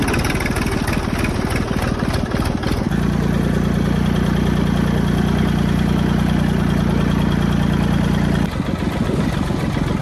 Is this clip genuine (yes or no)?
yes